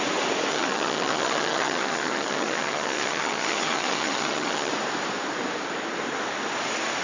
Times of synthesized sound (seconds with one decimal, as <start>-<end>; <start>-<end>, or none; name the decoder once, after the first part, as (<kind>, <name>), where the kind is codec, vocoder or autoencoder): 0.5-4.7 (vocoder, HiFi-GAN)